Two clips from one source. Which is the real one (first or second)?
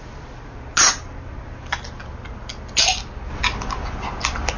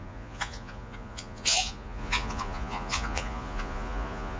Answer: first